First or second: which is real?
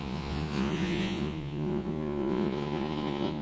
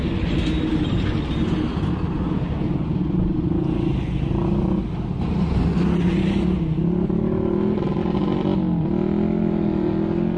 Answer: second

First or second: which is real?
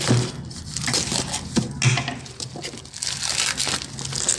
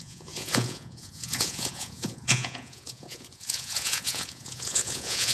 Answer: first